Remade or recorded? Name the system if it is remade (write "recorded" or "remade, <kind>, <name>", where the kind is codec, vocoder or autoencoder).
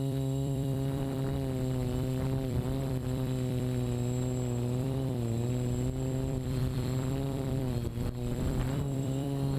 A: remade, vocoder, BigVGAN v2